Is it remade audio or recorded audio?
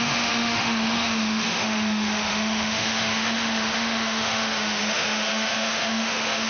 remade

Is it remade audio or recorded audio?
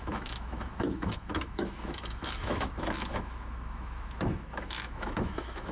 remade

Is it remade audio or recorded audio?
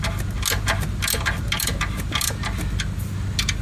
recorded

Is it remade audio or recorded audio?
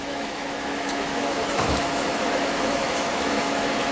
remade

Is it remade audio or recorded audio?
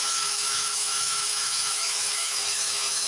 remade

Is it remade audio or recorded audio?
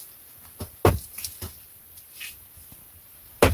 recorded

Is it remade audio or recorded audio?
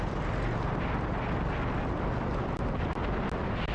recorded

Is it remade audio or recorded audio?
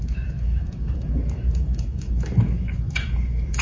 remade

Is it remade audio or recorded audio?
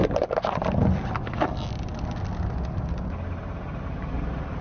recorded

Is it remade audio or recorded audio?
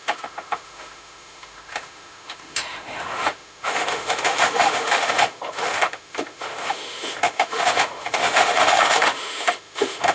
remade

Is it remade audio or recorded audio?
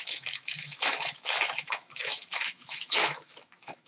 remade